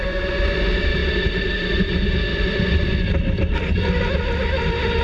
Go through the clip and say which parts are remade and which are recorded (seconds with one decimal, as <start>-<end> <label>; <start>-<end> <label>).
0.0-2.3 recorded; 2.3-4.0 remade; 4.0-5.0 recorded